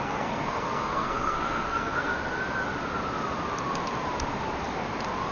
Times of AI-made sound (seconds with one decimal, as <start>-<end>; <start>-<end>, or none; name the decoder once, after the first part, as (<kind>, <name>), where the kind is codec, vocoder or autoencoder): 0.0-2.1 (codec, SNAC)